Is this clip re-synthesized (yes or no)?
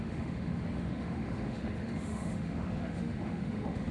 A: yes